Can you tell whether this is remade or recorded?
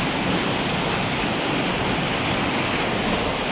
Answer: recorded